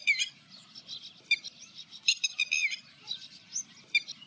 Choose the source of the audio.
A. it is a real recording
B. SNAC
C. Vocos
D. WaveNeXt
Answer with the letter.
A